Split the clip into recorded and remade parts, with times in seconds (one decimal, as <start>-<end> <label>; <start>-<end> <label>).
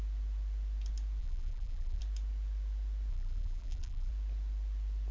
0.0-1.2 recorded; 1.2-2.0 remade; 2.0-3.1 recorded; 3.1-4.1 remade; 4.1-5.1 recorded